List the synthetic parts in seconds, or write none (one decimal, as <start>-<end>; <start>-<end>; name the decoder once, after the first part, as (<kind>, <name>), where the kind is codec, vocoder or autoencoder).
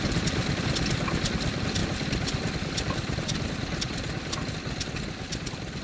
none